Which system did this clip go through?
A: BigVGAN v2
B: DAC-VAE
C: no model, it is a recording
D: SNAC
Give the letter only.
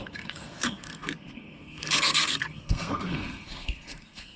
D